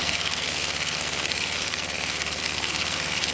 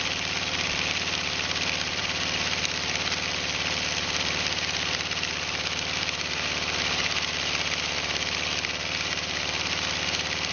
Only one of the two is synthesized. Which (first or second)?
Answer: first